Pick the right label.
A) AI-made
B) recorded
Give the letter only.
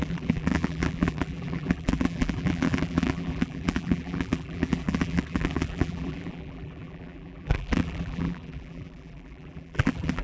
A